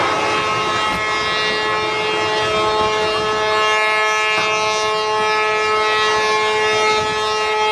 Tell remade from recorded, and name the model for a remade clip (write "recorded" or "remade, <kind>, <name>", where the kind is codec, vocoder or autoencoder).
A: recorded